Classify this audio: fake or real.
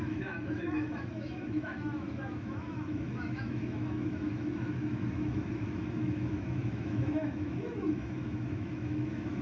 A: fake